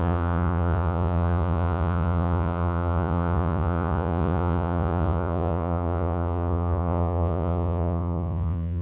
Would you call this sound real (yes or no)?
no